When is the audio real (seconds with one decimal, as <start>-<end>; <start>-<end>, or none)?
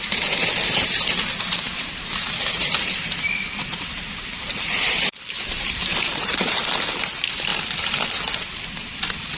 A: 0.0-1.7; 6.6-9.4